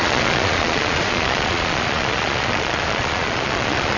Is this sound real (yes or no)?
no